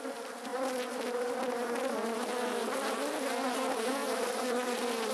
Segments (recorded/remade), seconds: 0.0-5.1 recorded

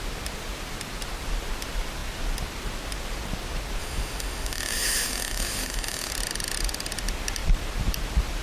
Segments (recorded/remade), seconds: 0.0-3.8 recorded; 3.8-6.1 remade; 6.1-8.4 recorded

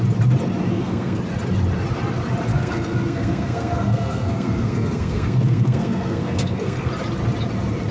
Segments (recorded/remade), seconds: 0.0-0.7 recorded; 0.7-1.2 remade; 1.2-2.5 recorded; 2.5-6.9 remade; 6.9-7.9 recorded